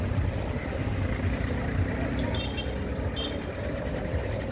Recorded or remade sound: recorded